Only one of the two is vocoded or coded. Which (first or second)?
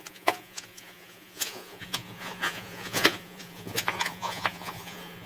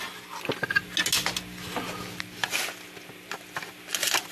first